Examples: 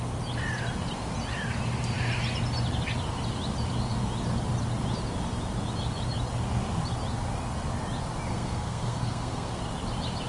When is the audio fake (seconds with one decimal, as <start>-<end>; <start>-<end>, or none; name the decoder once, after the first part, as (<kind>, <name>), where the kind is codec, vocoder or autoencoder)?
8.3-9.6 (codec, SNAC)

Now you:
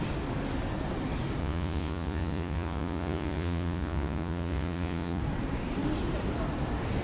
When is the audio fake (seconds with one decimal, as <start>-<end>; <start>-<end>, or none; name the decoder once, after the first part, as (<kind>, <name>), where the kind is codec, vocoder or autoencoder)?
1.4-5.2 (vocoder, Vocos)

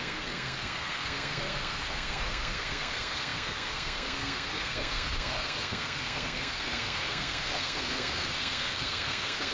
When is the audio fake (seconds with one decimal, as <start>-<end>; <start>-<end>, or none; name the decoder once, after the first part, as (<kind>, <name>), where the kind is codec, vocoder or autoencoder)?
0.0-9.5 (codec, SNAC)

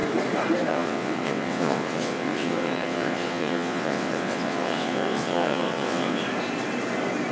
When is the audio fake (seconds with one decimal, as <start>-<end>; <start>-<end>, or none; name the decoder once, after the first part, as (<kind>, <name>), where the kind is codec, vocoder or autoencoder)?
0.7-6.2 (vocoder, WaveNeXt)

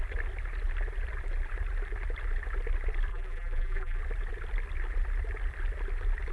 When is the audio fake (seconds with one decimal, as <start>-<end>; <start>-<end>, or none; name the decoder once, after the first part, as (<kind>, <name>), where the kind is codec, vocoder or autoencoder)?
3.1-4.0 (vocoder, BigVGAN v2)